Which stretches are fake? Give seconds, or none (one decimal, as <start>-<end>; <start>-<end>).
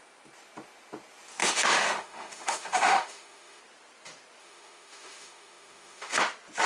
1.4-3.6; 4.4-6.2